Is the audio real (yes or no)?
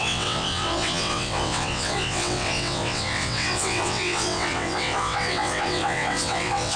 no